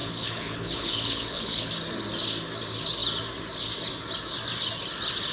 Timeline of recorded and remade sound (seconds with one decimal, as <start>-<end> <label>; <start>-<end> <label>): 0.0-1.7 remade; 1.7-5.3 recorded